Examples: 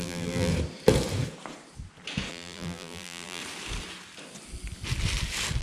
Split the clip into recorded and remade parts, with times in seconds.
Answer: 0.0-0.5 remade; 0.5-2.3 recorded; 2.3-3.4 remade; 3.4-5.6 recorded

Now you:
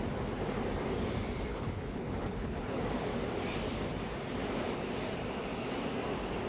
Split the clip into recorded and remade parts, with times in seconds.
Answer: 0.0-1.5 recorded; 1.5-2.8 remade; 2.8-6.5 recorded

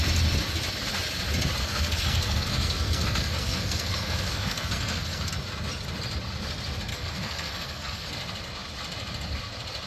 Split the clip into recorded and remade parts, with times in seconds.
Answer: 0.0-1.6 recorded; 1.6-5.3 remade; 5.3-6.9 recorded; 6.9-8.1 remade; 8.1-9.9 recorded

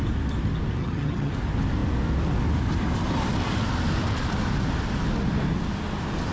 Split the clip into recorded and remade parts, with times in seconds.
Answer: 0.0-0.8 recorded; 0.8-1.3 remade; 1.3-6.3 recorded

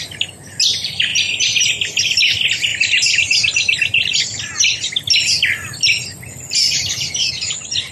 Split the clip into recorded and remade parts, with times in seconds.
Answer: 0.0-7.9 recorded

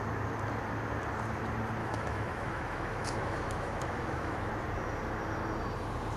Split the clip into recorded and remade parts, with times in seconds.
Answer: 0.0-1.8 recorded; 1.8-4.5 remade; 4.5-6.2 recorded

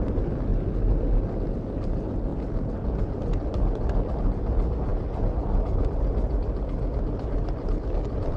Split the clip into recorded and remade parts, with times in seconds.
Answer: 0.0-8.4 recorded

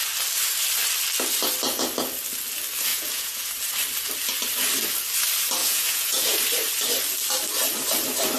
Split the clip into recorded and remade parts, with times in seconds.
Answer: 0.0-2.9 recorded; 2.9-3.5 remade; 3.5-5.6 recorded; 5.6-6.4 remade; 6.4-8.4 recorded